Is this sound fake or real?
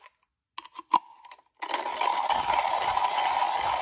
real